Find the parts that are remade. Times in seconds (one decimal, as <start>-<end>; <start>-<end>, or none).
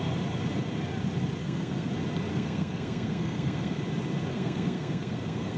1.4-1.9; 2.3-3.8; 4.3-5.6